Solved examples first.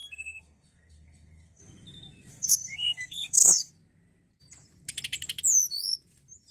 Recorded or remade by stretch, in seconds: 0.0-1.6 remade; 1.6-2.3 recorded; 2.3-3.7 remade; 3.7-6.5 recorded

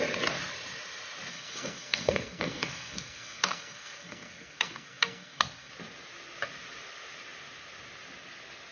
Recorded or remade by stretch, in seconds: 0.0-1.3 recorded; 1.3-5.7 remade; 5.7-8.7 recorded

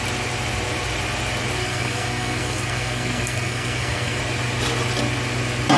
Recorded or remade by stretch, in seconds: 0.0-1.6 recorded; 1.6-4.2 remade; 4.2-5.8 recorded

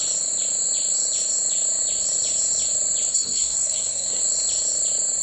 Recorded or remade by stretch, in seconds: 0.0-3.1 recorded; 3.1-4.2 remade; 4.2-5.2 recorded